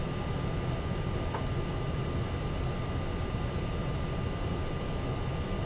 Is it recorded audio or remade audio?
recorded